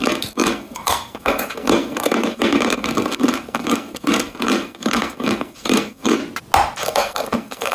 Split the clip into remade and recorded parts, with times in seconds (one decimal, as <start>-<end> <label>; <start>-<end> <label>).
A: 0.0-6.2 remade; 6.2-6.8 recorded; 6.8-7.7 remade